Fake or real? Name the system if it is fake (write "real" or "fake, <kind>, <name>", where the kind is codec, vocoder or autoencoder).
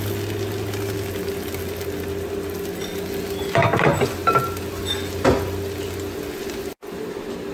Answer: real